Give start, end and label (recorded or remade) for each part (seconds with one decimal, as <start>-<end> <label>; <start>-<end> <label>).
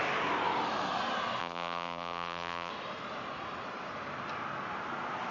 0.0-1.4 recorded; 1.4-2.7 remade; 2.7-5.3 recorded